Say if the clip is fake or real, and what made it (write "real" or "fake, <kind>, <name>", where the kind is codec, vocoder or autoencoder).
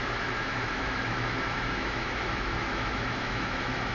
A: fake, autoencoder, DAC-VAE